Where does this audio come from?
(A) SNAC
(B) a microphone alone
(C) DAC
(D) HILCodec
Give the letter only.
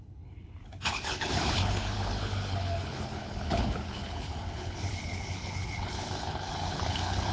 D